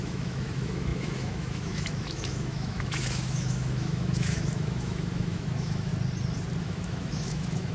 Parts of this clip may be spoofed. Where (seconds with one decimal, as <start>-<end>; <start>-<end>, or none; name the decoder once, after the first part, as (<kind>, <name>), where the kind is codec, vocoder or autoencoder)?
0.0-5.9 (autoencoder, DAC-VAE); 6.6-7.7